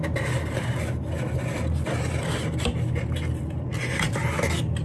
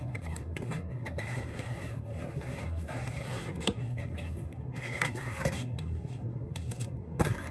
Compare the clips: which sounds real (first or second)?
first